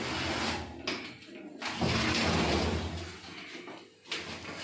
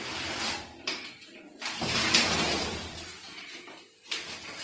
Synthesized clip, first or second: second